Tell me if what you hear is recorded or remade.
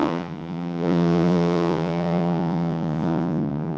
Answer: remade